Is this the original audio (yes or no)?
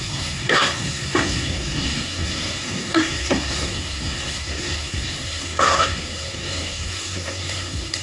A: no